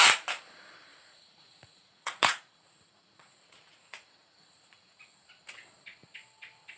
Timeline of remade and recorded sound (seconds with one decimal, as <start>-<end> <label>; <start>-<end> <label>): 0.0-0.9 recorded; 0.9-5.0 remade; 5.0-6.8 recorded